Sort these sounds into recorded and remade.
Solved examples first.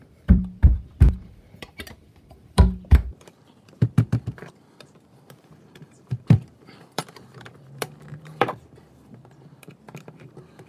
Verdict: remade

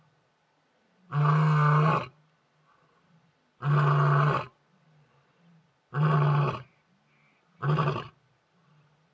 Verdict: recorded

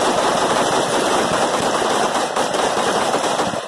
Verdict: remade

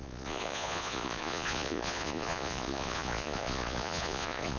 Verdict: remade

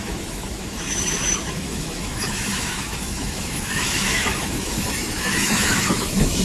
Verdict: remade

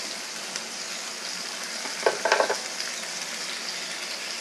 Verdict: recorded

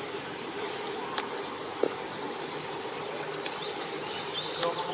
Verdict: recorded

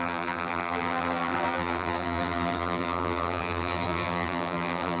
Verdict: remade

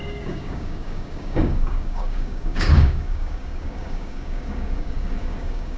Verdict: remade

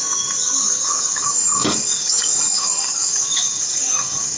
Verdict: remade